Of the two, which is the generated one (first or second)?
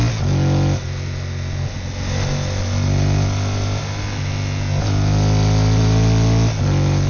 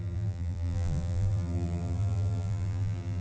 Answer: second